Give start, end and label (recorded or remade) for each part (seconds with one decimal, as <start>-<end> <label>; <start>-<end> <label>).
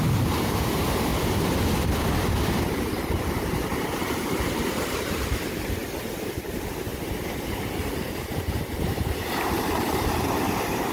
0.0-1.1 remade; 1.1-2.2 recorded; 2.2-5.8 remade; 5.8-6.4 recorded; 6.4-6.9 remade; 6.9-7.6 recorded; 7.6-10.9 remade